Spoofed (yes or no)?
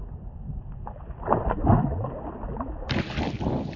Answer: no